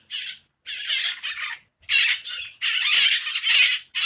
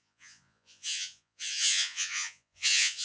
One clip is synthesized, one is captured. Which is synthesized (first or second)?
second